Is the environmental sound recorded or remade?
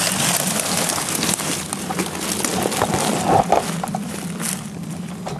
recorded